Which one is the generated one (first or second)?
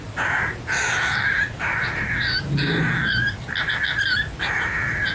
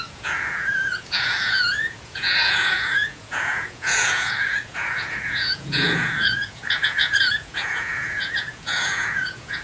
second